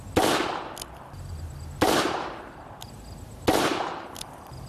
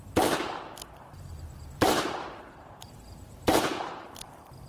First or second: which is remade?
second